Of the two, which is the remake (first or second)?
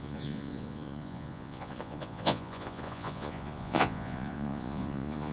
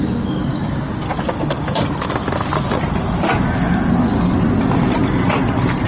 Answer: first